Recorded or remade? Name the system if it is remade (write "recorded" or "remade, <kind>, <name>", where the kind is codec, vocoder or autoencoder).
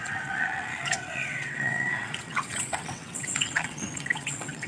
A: remade, vocoder, WaveNeXt